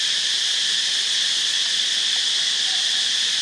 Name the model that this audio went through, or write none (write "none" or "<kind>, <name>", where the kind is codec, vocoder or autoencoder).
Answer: none